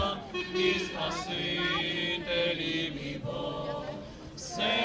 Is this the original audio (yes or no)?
yes